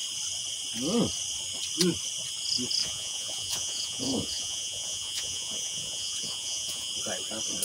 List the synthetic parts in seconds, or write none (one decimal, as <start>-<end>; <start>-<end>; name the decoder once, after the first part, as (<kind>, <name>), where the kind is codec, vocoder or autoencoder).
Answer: 2.8-6.9 (vocoder, Vocos)